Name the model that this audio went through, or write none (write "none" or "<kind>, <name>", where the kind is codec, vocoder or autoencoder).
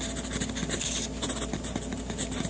none